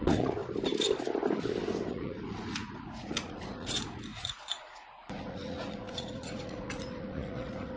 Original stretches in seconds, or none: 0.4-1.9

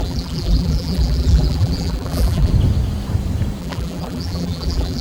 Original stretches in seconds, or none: 2.5-3.6

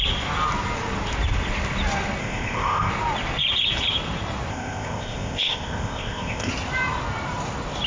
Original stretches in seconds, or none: 0.0-2.2; 2.9-4.5; 6.5-7.9

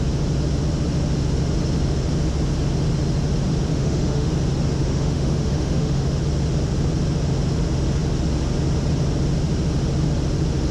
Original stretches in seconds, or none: 0.0-3.7; 4.3-4.8; 6.2-10.7